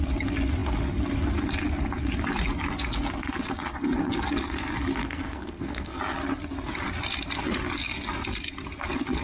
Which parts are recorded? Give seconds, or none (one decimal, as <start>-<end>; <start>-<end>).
0.0-5.0; 6.0-9.2